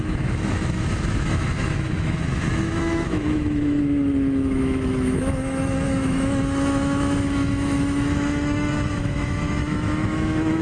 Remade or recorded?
remade